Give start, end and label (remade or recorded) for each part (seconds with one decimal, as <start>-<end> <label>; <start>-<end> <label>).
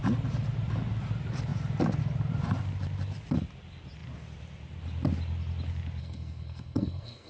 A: 0.0-6.0 recorded; 6.0-7.3 remade